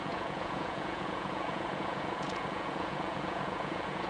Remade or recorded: remade